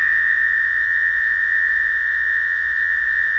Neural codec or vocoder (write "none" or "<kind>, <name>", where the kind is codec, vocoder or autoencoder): vocoder, WaveNeXt